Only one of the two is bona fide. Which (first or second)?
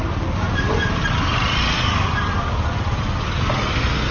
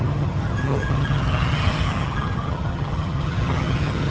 first